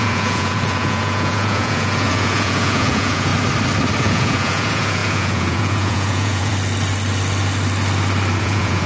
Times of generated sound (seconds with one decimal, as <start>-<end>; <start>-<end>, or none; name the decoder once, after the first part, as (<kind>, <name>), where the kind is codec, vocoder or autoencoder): 0.0-3.3 (vocoder, Vocos); 4.0-6.5; 8.4-8.9